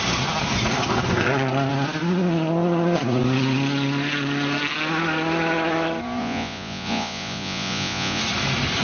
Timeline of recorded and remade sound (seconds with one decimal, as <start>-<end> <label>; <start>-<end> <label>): 0.0-6.2 recorded; 6.2-8.2 remade; 8.2-8.8 recorded